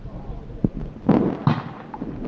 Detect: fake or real real